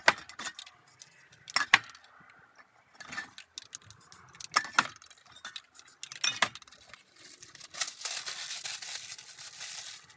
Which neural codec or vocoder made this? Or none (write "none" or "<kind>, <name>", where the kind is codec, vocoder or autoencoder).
none